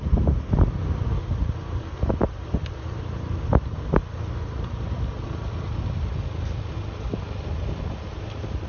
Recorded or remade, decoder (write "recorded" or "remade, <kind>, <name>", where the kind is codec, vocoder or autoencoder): recorded